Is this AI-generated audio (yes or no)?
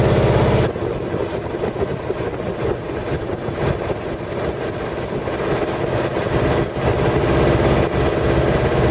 no